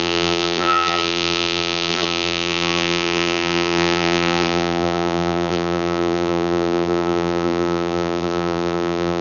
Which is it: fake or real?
fake